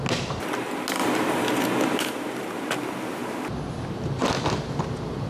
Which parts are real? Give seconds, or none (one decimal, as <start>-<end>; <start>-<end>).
0.0-5.3